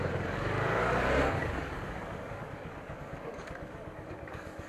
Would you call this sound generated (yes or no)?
yes